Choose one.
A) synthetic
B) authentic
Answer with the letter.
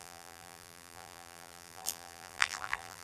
A